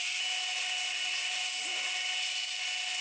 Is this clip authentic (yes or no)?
yes